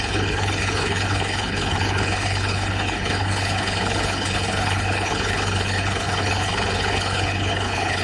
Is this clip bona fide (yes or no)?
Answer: no